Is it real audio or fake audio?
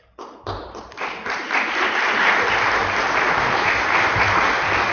real